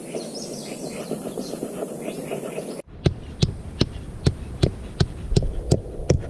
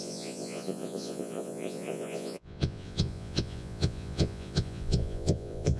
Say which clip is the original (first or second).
first